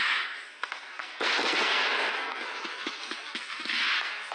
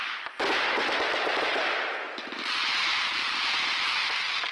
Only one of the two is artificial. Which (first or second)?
first